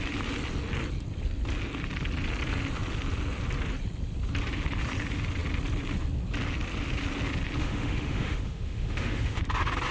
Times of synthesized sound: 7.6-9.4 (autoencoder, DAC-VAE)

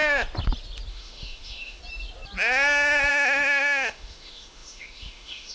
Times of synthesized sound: 0.9-1.8 (autoencoder, DAC-VAE); 3.1-5.5

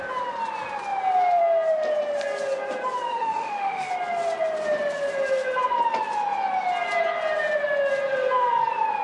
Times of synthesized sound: 3.1-3.9 (autoencoder, DAC-VAE)

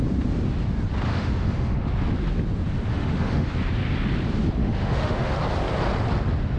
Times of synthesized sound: 1.1-1.9 (autoencoder, DAC-VAE); 2.9-3.5; 4.6-5.3

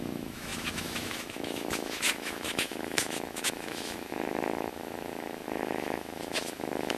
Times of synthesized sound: 0.0-7.0 (autoencoder, DAC-VAE)

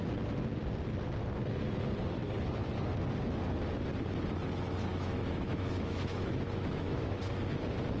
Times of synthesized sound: 4.9-7.2 (autoencoder, DAC-VAE)